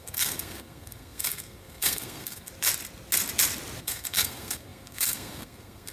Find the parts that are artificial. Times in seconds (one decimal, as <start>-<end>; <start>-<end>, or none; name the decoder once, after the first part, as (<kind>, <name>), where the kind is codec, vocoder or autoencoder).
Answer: 0.0-2.5 (codec, SNAC); 3.8-5.9